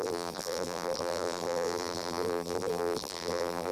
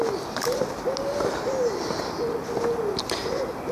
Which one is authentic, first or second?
second